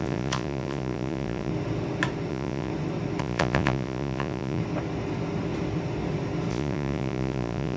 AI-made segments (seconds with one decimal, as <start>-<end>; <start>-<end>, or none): 0.0-1.5; 2.3-2.7; 3.2-4.6; 6.5-7.8

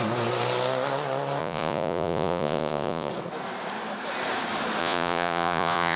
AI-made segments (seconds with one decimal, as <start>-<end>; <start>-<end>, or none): 1.4-3.1; 4.8-6.0

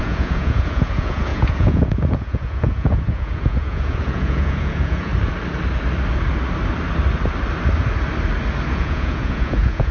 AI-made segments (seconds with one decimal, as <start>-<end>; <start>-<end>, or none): 0.0-5.1; 8.7-9.9

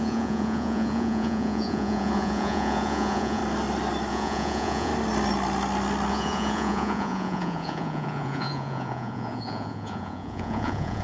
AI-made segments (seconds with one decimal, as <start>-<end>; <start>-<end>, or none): 0.0-3.4; 4.1-4.9; 6.1-11.0

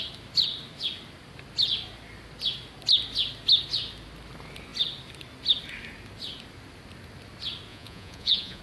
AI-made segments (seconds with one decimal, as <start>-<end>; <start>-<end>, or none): 7.7-8.6

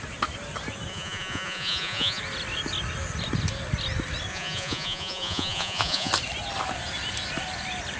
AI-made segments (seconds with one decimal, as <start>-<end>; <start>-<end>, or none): 0.9-2.2; 4.3-6.1

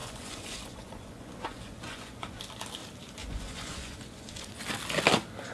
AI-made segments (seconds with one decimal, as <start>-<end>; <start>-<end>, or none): 0.0-2.4; 3.2-4.6